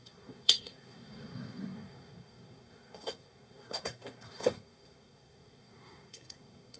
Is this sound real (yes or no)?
no